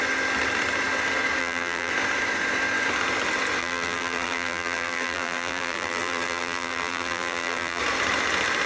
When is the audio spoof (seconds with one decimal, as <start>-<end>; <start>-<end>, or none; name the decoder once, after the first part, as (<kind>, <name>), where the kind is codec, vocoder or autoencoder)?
1.4-1.9 (vocoder, BigVGAN v2); 3.6-7.8